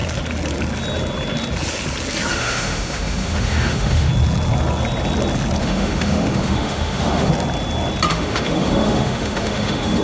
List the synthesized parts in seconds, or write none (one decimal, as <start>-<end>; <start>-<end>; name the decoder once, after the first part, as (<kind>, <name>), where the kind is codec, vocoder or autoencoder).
2.3-4.1 (autoencoder, DAC-VAE); 5.6-7.3; 8.1-10.0